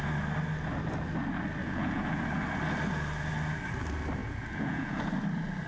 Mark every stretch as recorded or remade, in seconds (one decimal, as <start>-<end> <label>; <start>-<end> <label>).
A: 0.0-1.6 recorded; 1.6-2.2 remade; 2.2-4.2 recorded; 4.2-5.1 remade; 5.1-5.7 recorded